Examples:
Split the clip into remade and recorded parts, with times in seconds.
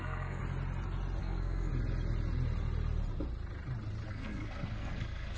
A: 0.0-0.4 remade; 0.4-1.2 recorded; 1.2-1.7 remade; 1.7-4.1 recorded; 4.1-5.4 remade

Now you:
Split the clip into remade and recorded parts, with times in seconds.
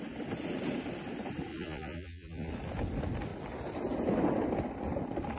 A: 0.0-1.5 recorded; 1.5-2.5 remade; 2.5-5.4 recorded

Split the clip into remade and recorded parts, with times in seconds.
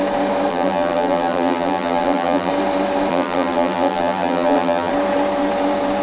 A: 0.0-0.5 recorded; 0.5-2.5 remade; 2.5-3.1 recorded; 3.1-4.9 remade; 4.9-6.0 recorded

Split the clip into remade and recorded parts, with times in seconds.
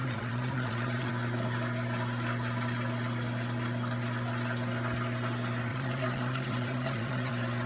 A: 0.0-1.1 remade; 1.1-5.7 recorded; 5.7-7.3 remade; 7.3-7.7 recorded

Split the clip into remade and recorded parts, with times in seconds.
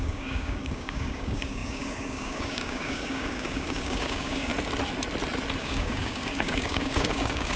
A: 0.0-4.5 remade; 4.5-5.6 recorded; 5.6-7.6 remade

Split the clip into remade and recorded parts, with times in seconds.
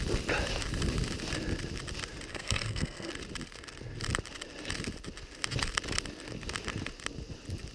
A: 0.0-2.3 recorded; 2.3-3.1 remade; 3.1-7.7 recorded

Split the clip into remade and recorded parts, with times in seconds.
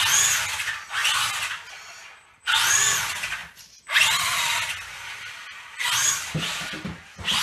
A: 0.0-7.4 recorded